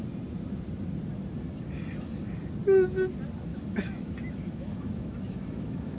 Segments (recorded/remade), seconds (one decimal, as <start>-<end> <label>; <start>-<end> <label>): 0.0-3.5 recorded; 3.5-6.0 remade

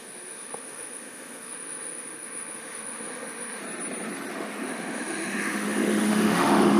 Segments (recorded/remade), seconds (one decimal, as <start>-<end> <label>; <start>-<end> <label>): 0.0-3.6 remade; 3.6-4.3 recorded; 4.3-6.8 remade

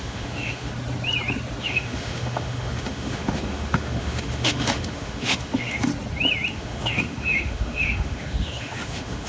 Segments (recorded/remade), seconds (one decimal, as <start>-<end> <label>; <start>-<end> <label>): 0.0-0.7 remade; 0.7-1.6 recorded; 1.6-5.9 remade; 5.9-6.5 recorded; 6.5-9.3 remade

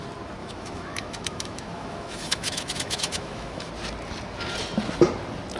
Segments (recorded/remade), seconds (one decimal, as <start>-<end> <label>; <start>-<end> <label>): 0.0-0.4 recorded; 0.4-3.7 remade; 3.7-5.6 recorded

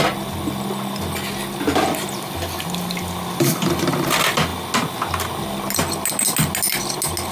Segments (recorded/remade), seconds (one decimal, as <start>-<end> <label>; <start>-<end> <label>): 0.0-7.3 recorded

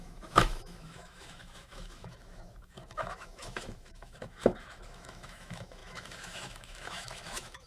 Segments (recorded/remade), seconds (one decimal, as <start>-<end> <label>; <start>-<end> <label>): 0.0-7.7 remade